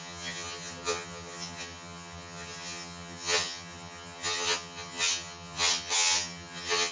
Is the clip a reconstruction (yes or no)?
yes